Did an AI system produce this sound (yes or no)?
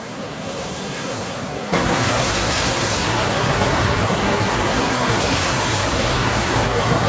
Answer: yes